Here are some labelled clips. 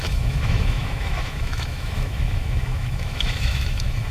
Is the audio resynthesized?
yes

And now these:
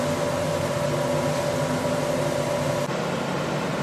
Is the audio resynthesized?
no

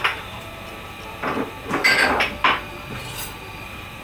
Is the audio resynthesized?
yes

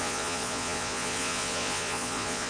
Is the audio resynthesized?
yes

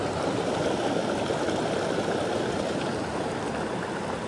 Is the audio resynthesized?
no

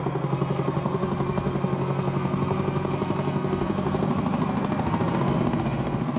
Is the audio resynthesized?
yes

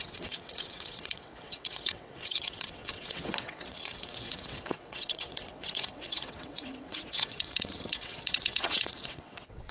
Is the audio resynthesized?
yes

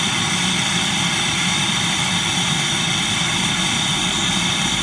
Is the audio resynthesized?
no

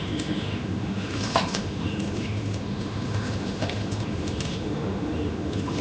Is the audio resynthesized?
yes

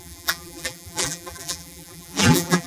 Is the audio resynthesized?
yes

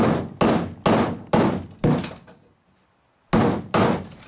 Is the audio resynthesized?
no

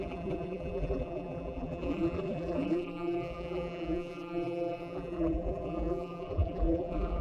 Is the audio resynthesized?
yes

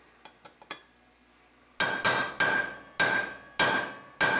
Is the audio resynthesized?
no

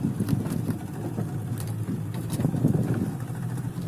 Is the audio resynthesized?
yes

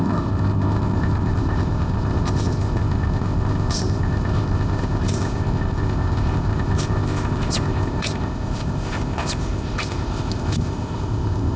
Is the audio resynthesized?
yes